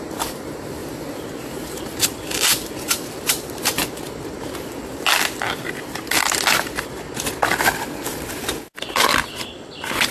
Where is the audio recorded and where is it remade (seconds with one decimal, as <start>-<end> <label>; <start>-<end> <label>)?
0.0-0.8 recorded; 0.8-4.0 remade; 4.0-8.1 recorded; 8.1-9.0 remade; 9.0-10.1 recorded